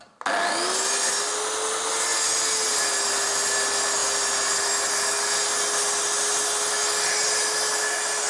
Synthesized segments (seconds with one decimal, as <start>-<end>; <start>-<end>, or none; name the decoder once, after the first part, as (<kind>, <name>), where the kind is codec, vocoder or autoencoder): none